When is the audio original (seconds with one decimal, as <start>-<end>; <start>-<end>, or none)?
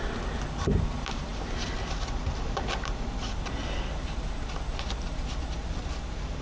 none